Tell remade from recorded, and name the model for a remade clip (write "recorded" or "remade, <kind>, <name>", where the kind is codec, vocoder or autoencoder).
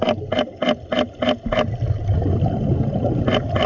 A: recorded